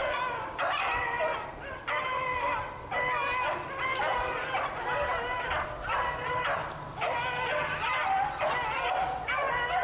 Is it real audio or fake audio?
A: real